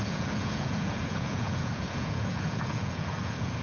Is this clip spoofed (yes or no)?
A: yes